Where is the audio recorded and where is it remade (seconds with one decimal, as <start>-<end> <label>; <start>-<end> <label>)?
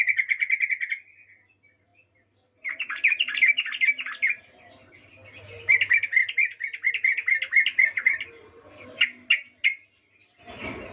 0.0-1.9 recorded; 1.9-4.4 remade; 4.4-10.9 recorded